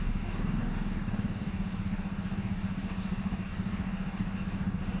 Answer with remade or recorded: remade